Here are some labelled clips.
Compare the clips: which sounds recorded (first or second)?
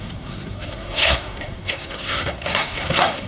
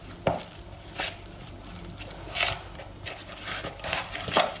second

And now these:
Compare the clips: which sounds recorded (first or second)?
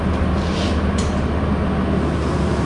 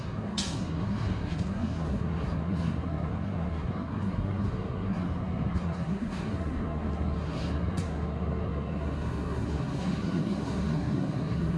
first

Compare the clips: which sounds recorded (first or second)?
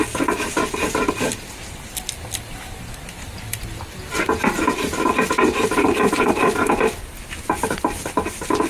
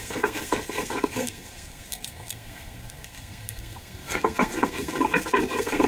first